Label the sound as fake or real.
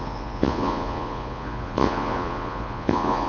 fake